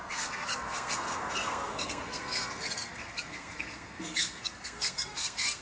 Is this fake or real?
fake